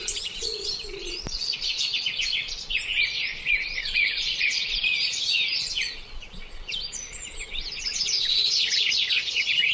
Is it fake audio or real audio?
fake